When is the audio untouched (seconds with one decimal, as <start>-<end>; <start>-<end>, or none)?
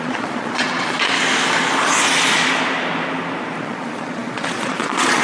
1.1-3.6